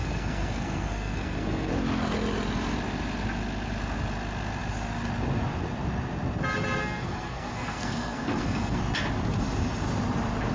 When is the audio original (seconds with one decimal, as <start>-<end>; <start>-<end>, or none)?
1.7-6.8; 8.8-10.5